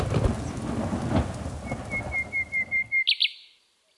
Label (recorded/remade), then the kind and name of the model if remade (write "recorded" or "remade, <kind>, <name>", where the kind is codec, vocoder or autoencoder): recorded